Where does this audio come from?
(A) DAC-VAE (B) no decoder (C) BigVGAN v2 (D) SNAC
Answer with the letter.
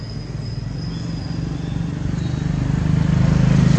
B